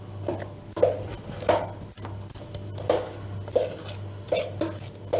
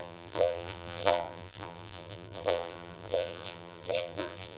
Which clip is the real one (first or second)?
first